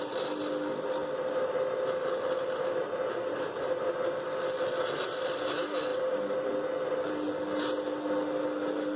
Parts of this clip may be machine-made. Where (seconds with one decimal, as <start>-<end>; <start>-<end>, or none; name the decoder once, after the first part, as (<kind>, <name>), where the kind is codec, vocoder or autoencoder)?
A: none